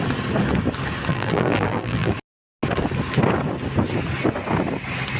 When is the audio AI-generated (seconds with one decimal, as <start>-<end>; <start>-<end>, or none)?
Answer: 1.1-2.1